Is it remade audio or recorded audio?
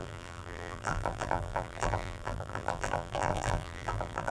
remade